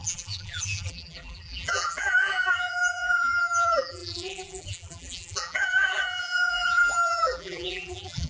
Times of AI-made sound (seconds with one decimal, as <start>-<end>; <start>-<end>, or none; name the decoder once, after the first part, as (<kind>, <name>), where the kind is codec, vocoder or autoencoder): 0.0-8.3 (vocoder, BigVGAN v2)